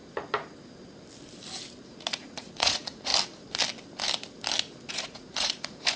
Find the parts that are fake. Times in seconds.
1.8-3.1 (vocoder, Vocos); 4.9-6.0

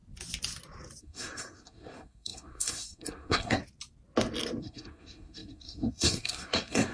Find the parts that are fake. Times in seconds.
1.0-3.6 (codec, SNAC); 4.6-6.9

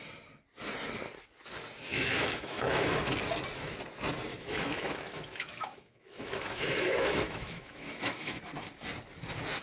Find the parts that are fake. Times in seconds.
1.9-3.1 (autoencoder, DAC-VAE); 4.3-8.4

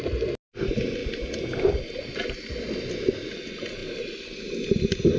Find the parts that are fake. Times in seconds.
none

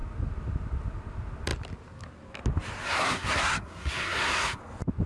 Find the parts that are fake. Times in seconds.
2.8-4.6 (codec, SNAC)

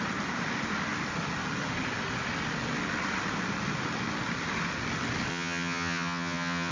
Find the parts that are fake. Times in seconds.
5.3-6.7 (vocoder, HiFi-GAN)

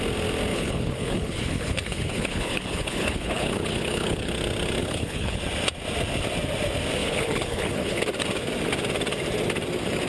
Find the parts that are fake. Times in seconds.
0.5-4.3 (codec, HILCodec); 4.8-5.4; 7.0-8.0

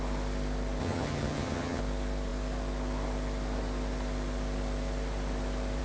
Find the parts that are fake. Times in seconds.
0.8-1.8 (vocoder, HiFi-GAN)